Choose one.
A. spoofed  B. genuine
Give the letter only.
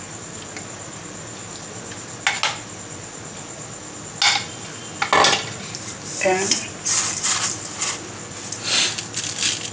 B